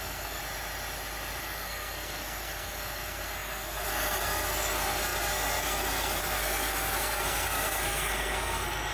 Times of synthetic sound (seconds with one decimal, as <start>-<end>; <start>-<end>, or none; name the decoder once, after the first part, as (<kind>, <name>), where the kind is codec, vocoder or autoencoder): 0.0-0.4 (codec, SNAC); 1.4-8.9